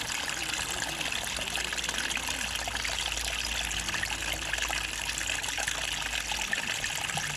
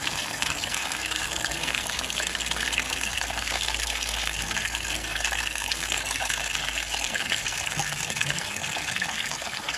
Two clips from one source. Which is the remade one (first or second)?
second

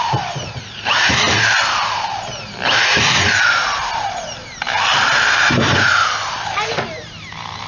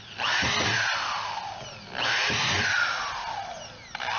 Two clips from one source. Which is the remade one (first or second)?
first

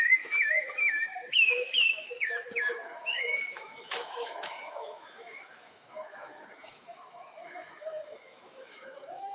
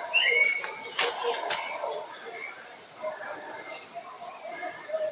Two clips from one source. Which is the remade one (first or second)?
first